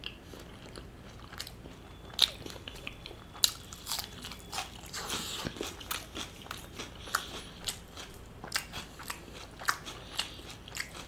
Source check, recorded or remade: recorded